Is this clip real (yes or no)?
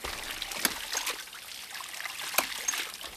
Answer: yes